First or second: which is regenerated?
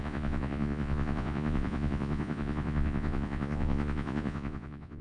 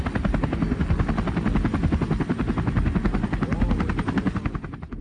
first